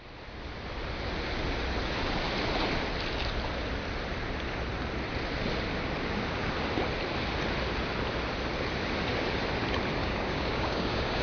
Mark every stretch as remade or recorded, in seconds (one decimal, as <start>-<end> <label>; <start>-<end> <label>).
0.0-10.0 recorded; 10.0-11.2 remade